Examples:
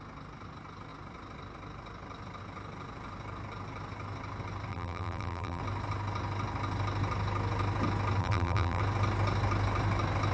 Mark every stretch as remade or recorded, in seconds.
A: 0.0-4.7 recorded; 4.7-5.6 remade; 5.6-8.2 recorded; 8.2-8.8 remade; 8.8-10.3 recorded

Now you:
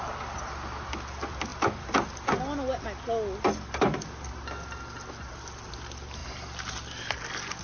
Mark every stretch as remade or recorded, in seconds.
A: 0.0-7.6 recorded

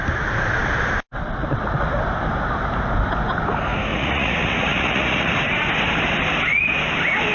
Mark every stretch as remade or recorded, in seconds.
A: 0.0-3.9 recorded; 3.9-5.3 remade; 5.3-7.3 recorded

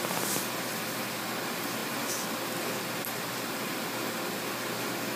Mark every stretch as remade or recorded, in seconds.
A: 0.0-5.2 recorded

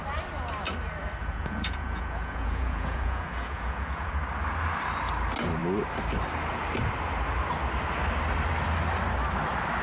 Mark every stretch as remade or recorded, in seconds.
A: 0.0-1.2 recorded; 1.2-4.1 remade; 4.1-9.8 recorded

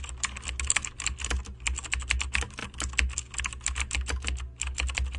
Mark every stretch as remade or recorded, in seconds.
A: 0.0-5.2 recorded

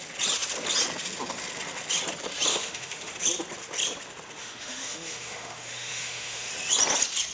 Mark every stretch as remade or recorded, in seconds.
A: 0.0-2.5 recorded; 2.5-3.1 remade; 3.1-4.4 recorded; 4.4-6.5 remade; 6.5-7.3 recorded

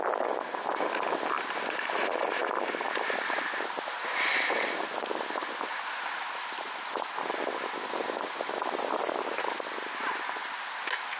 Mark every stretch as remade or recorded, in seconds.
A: 0.0-11.2 recorded